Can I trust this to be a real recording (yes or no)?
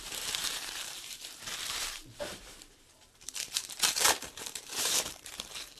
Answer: no